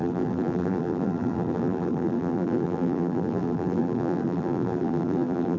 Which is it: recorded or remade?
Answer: remade